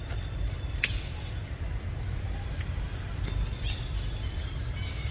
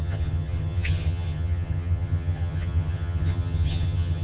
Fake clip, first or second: second